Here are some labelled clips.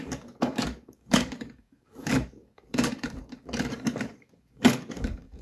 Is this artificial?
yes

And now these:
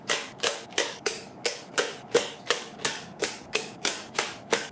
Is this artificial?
yes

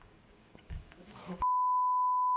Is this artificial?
yes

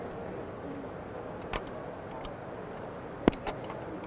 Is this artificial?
no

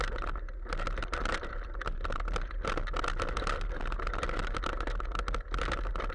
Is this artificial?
no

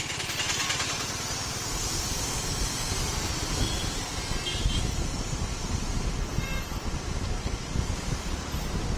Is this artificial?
no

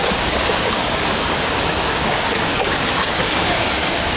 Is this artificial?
yes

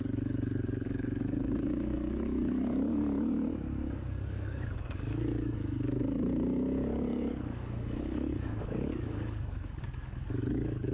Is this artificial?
yes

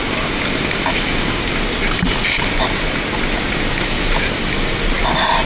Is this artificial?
no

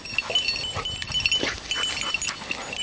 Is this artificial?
no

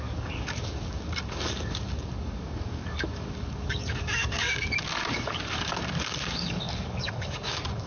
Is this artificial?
yes